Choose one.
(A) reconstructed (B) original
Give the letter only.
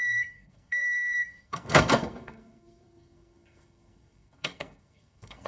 A